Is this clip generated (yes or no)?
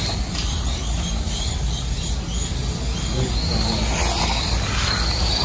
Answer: no